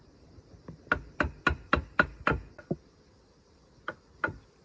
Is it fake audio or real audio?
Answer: real